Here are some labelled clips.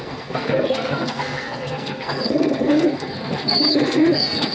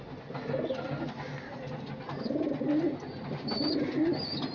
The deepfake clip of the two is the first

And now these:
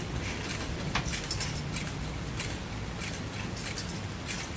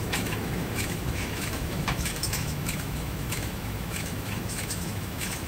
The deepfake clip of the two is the second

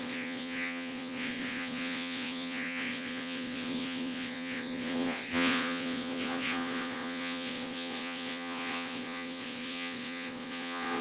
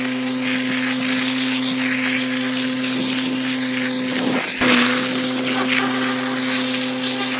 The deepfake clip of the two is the first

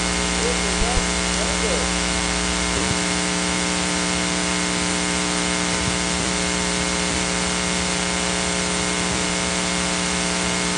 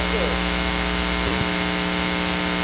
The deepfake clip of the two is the first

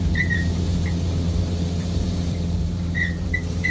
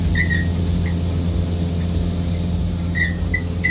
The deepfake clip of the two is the first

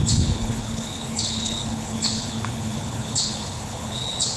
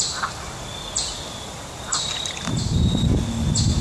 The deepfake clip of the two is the first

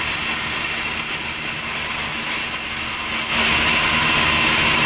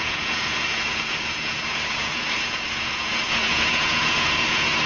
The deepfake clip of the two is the second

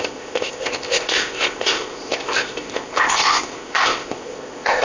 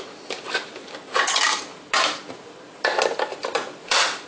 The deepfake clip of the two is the first